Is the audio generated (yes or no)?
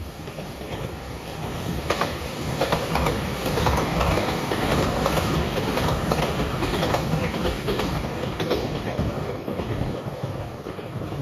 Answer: yes